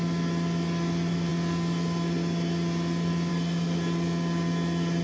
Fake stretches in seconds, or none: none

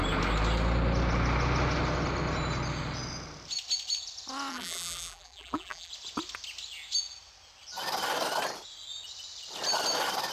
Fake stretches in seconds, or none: 4.5-5.9 (vocoder, BigVGAN v2)

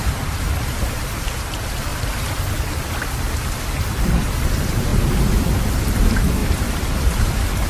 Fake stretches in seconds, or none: 0.0-7.7 (vocoder, BigVGAN v2)

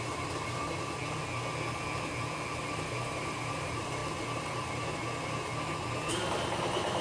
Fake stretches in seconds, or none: 0.0-1.0 (vocoder, BigVGAN v2); 2.6-4.0; 6.1-7.0

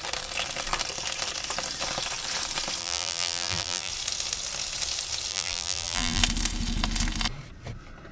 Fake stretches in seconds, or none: 2.8-3.9 (vocoder, BigVGAN v2); 5.3-6.2

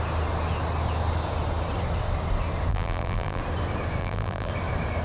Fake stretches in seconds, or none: 2.7-3.4 (vocoder, BigVGAN v2); 4.0-4.5

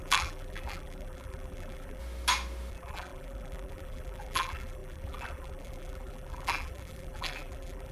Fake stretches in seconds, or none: 0.0-2.0 (vocoder, BigVGAN v2); 2.7-7.9

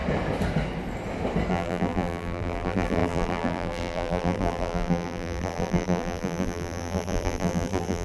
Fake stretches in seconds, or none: 1.5-8.0 (vocoder, BigVGAN v2)